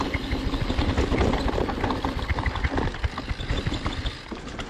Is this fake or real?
real